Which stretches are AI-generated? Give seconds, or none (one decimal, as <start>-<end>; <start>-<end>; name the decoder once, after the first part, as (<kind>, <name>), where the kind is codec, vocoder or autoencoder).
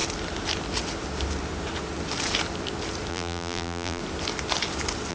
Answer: 3.1-4.0 (vocoder, BigVGAN v2)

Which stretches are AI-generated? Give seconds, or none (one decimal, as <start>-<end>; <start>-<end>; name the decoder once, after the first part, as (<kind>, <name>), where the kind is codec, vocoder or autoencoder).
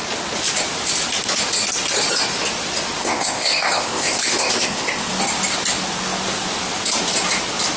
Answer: 3.0-5.1 (codec, ZipCodec)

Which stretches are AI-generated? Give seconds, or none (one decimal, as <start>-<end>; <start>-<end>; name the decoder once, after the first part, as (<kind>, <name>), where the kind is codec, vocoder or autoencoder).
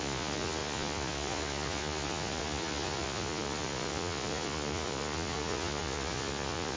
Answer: 0.0-6.8 (vocoder, Vocos)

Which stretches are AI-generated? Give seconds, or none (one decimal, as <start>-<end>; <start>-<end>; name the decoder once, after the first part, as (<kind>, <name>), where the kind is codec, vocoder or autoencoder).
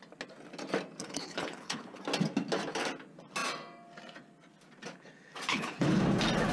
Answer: 1.0-2.0 (codec, HILCodec); 5.5-6.0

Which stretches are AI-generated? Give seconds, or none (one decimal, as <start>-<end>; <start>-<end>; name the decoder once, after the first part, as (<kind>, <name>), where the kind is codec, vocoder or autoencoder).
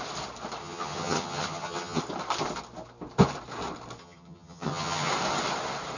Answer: 0.6-2.0 (vocoder, HiFi-GAN); 4.0-5.1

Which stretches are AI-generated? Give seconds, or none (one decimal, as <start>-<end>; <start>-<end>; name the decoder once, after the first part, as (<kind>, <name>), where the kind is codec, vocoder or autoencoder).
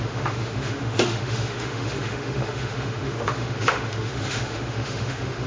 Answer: 0.0-5.5 (autoencoder, DAC-VAE)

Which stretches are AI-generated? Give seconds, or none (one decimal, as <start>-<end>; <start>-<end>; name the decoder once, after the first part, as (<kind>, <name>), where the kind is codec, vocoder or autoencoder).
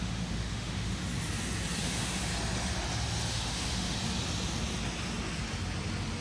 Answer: 0.0-1.0 (autoencoder, DAC-VAE); 1.8-2.3; 3.3-4.0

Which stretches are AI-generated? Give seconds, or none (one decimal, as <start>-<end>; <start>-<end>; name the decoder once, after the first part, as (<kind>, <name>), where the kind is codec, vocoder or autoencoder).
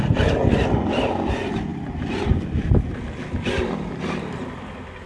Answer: none